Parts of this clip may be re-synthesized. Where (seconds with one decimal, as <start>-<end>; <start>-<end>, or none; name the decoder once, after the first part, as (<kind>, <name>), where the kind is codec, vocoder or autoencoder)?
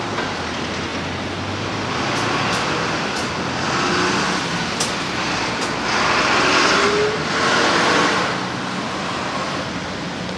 none